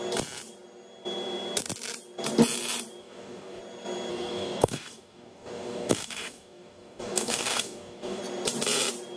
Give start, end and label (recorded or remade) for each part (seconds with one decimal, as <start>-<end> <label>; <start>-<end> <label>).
0.0-3.0 recorded; 3.0-3.6 remade; 3.6-4.1 recorded; 4.1-8.2 remade; 8.2-9.2 recorded